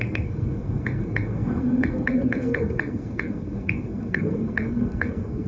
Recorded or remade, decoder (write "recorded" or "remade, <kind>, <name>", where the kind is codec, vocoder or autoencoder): remade, codec, SNAC